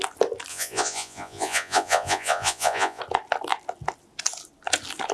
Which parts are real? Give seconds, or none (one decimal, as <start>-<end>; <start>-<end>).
0.0-0.5; 3.0-5.1